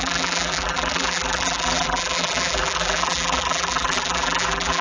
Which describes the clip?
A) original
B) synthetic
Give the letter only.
B